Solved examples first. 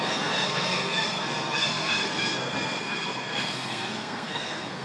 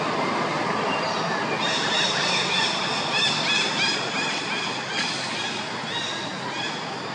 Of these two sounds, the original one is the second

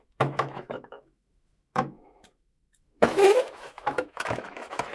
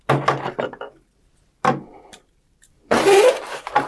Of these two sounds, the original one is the second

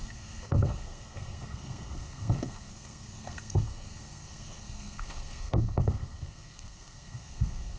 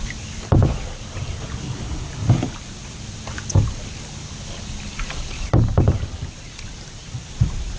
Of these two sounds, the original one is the second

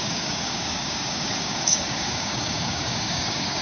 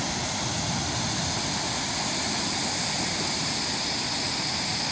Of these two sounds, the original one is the second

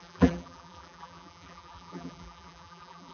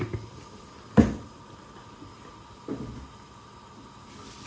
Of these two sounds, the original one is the second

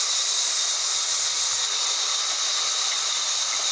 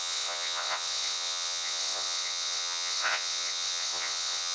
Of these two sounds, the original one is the first